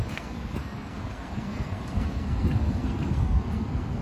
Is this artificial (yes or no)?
yes